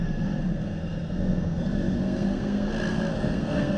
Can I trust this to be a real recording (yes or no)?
no